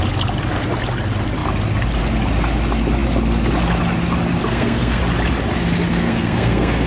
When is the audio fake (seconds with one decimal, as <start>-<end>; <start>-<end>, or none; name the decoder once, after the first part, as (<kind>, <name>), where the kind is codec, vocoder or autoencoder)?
4.5-5.0 (codec, SNAC); 5.9-6.9